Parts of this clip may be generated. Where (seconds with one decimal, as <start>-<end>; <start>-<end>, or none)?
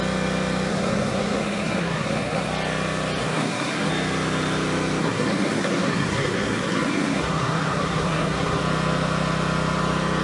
0.7-2.5; 3.2-3.9; 5.0-8.6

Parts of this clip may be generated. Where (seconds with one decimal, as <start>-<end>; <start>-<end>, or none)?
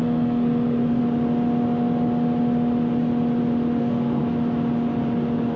0.0-1.0; 3.8-4.2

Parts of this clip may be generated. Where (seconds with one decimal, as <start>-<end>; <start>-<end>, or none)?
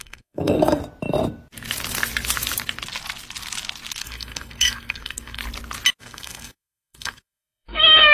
0.0-0.8; 4.0-5.4; 6.0-8.1